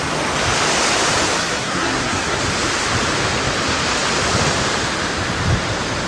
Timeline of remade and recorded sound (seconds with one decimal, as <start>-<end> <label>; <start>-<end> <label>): 0.0-1.4 recorded; 1.4-2.4 remade; 2.4-6.1 recorded